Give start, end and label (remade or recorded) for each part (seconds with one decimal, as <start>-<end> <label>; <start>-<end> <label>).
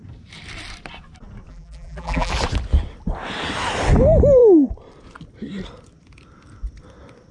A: 0.0-1.5 recorded; 1.5-2.3 remade; 2.3-7.3 recorded